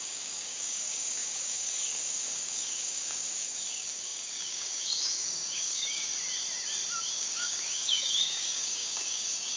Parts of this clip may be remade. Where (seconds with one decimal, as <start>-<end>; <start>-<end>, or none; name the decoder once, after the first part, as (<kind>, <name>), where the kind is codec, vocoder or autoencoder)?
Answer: 0.0-6.1 (codec, DAC); 7.1-9.6